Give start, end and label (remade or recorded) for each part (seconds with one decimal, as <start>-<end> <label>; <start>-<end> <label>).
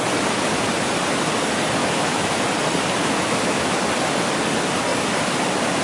0.0-1.8 recorded; 1.8-2.4 remade; 2.4-3.0 recorded; 3.0-3.8 remade; 3.8-5.8 recorded